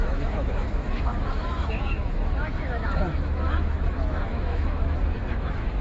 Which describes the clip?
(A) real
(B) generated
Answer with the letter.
B